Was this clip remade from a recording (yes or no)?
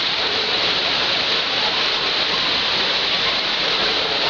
yes